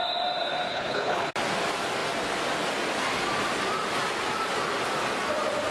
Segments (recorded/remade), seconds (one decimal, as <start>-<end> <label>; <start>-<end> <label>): 0.0-0.7 recorded; 0.7-1.3 remade; 1.3-5.7 recorded